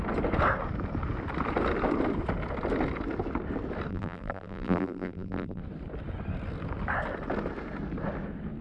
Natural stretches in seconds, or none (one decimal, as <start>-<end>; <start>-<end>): 0.0-3.9; 5.6-8.6